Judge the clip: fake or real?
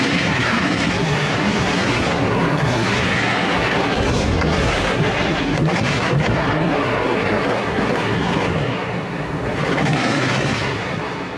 fake